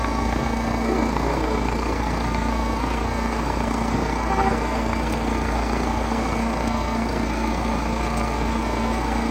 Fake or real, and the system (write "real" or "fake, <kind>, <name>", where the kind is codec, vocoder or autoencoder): fake, codec, SNAC